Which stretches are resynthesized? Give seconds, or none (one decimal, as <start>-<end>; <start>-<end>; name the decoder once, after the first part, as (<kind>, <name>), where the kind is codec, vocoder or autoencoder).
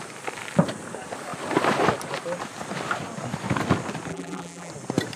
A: 4.1-4.7 (vocoder, BigVGAN v2)